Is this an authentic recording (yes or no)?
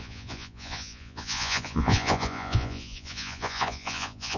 no